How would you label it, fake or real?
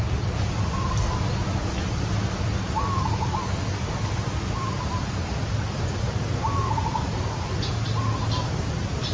real